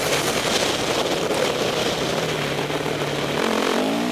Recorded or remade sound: recorded